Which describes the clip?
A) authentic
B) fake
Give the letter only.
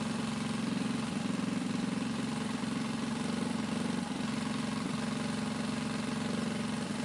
A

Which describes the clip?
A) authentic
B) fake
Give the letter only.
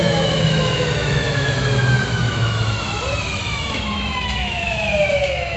B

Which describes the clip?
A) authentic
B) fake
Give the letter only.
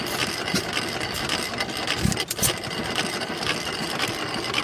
A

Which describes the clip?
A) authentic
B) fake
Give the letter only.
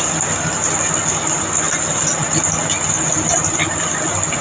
A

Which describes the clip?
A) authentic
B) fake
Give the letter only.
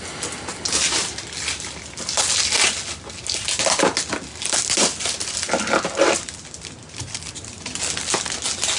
A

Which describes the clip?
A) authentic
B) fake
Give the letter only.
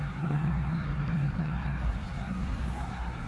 B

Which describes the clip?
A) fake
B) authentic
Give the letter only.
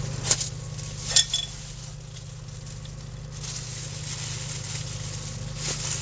B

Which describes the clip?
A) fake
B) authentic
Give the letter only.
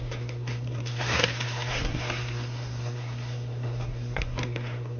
A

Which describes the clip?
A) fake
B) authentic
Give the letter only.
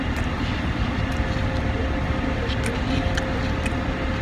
B